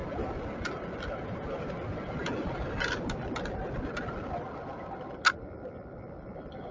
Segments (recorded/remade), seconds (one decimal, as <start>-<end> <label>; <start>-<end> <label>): 0.0-6.7 recorded